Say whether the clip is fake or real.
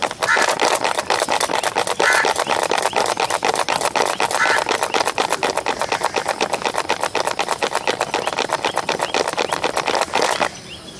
real